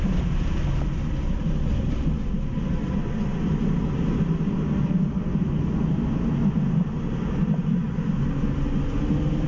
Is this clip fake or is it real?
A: real